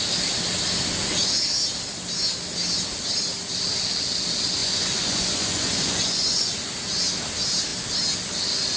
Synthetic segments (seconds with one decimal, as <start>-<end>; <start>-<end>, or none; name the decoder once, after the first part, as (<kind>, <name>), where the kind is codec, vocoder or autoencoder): 4.6-6.5 (vocoder, Vocos)